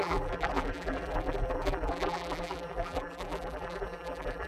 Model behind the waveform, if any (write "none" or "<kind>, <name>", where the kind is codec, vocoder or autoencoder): vocoder, BigVGAN v2